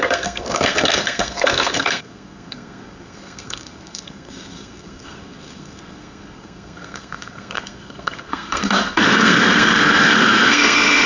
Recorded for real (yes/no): no